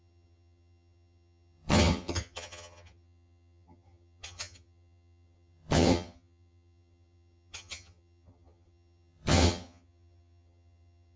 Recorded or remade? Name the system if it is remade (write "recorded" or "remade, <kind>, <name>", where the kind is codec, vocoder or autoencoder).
remade, vocoder, HiFi-GAN